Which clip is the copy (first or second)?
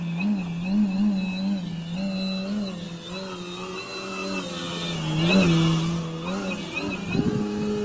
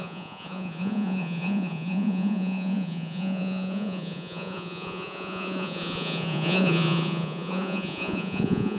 second